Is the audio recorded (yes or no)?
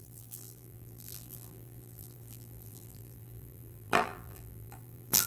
no